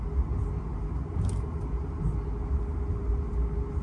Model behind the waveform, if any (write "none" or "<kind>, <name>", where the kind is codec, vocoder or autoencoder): none